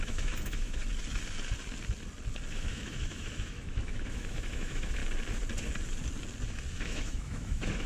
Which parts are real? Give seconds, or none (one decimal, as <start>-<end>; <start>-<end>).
0.8-2.5; 5.0-6.8